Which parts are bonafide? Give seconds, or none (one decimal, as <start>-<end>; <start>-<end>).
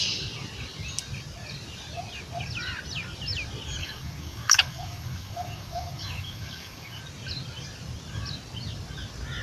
0.0-3.8; 7.0-9.4